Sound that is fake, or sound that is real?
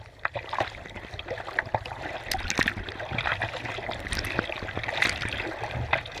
real